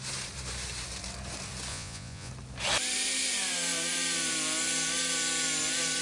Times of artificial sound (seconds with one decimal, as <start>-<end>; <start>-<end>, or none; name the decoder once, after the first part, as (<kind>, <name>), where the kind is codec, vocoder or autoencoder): 1.7-2.3 (vocoder, Vocos)